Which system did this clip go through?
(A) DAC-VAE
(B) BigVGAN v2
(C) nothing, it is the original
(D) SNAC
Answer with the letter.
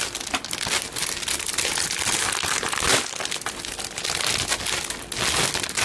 C